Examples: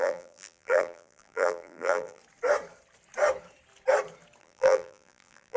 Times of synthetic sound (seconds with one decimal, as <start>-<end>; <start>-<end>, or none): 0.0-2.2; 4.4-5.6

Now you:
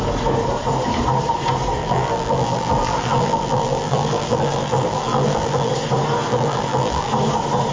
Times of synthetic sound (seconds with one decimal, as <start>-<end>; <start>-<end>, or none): 1.8-5.7; 6.3-7.1

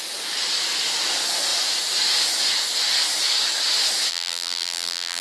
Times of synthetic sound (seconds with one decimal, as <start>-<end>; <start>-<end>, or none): 4.1-5.2

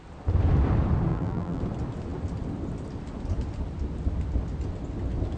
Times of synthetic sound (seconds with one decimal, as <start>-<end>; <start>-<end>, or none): 1.1-1.6

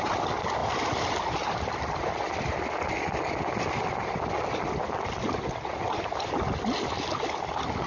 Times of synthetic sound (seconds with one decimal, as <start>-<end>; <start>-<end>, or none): none

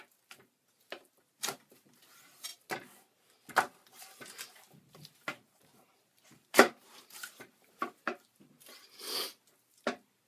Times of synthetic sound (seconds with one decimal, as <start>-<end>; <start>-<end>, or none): 5.3-8.3